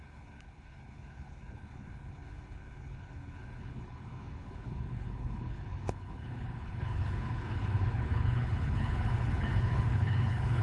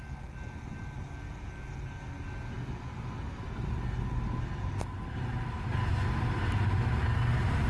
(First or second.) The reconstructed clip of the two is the first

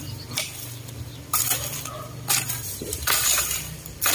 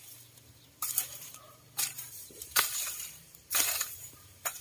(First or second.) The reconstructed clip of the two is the second